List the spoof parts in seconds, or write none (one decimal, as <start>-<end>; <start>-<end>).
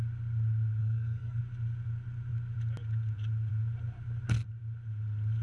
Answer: 0.8-1.4